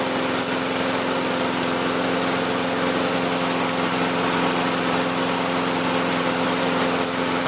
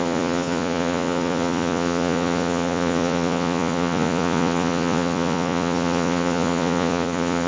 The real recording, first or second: first